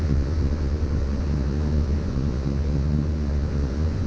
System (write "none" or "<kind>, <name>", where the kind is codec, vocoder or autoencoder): vocoder, Vocos